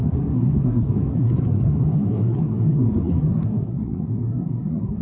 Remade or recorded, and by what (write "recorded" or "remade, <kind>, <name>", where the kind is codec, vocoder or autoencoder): remade, codec, SNAC